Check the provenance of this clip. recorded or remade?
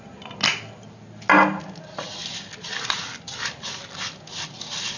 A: recorded